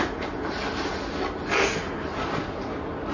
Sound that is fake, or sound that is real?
real